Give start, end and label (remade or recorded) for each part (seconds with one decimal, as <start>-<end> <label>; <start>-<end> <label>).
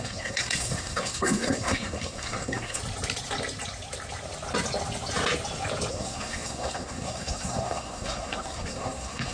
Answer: 0.0-2.8 remade; 2.8-5.9 recorded; 5.9-9.3 remade